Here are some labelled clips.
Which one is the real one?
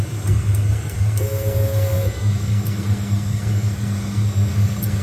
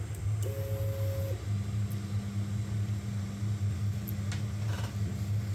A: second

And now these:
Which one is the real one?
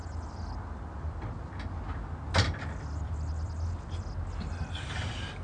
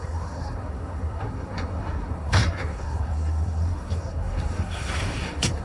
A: first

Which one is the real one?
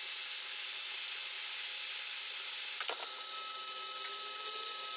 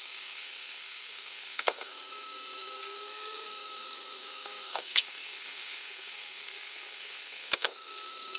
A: first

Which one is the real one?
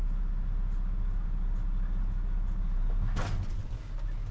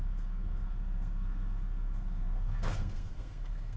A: first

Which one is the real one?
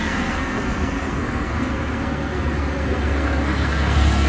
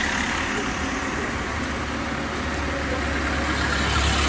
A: second